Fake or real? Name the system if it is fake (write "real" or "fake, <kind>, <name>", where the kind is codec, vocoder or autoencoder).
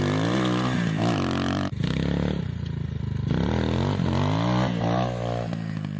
real